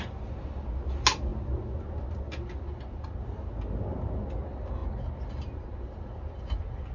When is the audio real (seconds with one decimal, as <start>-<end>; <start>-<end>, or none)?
0.0-6.9